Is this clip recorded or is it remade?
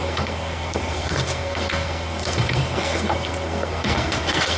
remade